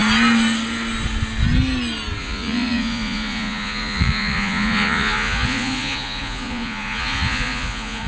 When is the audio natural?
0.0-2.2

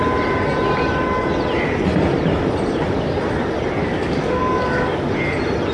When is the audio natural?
0.0-3.8; 5.1-5.7

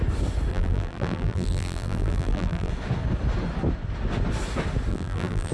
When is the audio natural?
0.0-0.5; 2.7-4.9

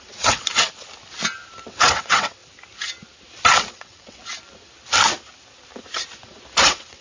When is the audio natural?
0.5-1.7; 2.4-3.7; 4.2-6.6

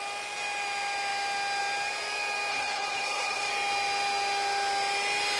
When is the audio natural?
0.0-2.5; 3.5-5.4